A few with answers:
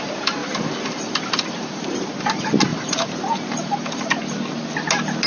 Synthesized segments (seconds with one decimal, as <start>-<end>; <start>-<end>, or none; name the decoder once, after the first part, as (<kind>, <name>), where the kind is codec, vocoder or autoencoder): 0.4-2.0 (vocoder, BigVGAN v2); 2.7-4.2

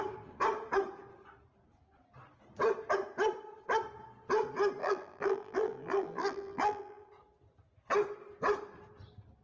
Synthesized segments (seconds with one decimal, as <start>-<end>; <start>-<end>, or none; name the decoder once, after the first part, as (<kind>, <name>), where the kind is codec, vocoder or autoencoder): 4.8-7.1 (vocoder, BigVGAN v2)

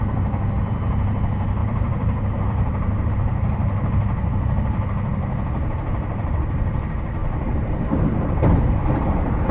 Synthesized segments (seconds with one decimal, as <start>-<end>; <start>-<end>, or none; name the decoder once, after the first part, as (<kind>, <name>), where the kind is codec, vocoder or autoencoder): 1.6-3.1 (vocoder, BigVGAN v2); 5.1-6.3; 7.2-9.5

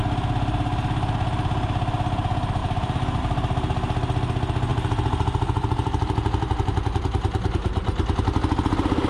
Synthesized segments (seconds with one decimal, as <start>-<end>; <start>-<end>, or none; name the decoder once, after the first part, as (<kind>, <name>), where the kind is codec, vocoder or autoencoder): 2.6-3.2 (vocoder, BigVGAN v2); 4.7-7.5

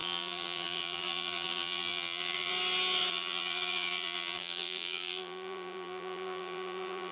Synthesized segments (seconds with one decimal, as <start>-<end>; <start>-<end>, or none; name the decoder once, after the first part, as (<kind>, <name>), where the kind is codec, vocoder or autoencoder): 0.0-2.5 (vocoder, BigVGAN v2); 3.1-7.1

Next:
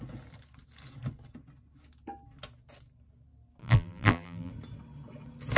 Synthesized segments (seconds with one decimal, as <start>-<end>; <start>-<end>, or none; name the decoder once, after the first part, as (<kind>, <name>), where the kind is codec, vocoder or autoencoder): 3.6-4.5 (vocoder, BigVGAN v2)

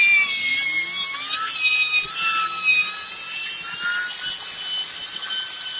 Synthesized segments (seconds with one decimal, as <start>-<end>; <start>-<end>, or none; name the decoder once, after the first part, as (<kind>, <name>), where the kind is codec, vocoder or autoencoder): none

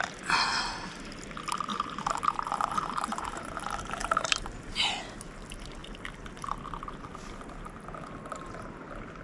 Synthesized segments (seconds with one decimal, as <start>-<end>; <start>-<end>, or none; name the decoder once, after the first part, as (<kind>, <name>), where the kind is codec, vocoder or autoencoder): 1.7-3.6 (vocoder, BigVGAN v2); 4.0-4.8